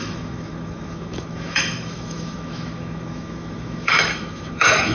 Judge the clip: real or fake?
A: fake